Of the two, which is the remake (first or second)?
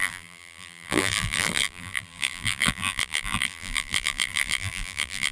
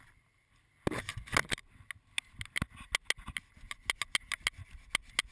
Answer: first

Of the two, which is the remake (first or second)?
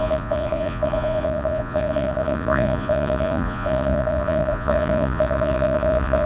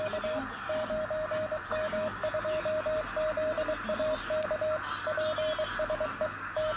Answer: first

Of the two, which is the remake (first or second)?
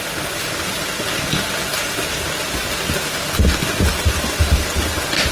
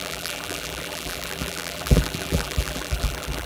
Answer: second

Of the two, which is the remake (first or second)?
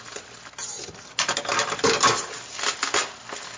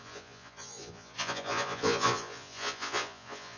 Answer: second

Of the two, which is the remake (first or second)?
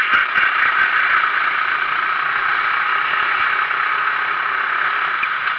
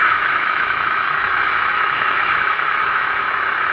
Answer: second